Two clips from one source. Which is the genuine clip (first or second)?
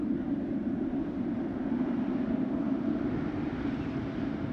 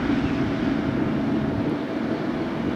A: second